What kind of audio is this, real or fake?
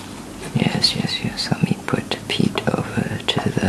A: real